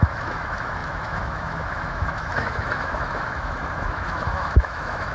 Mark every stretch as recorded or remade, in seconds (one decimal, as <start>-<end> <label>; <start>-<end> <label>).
0.0-5.1 remade